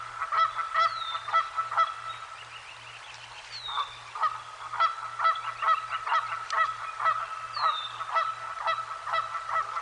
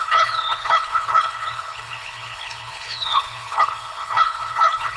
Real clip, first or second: first